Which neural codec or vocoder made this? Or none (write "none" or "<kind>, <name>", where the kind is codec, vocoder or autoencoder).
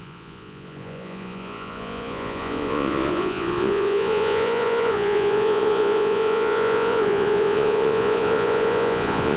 vocoder, Vocos